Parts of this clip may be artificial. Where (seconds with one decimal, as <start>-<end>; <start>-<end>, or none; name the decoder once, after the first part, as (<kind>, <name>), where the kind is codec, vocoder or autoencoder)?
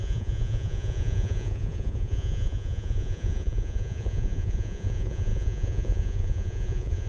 0.0-7.1 (vocoder, Vocos)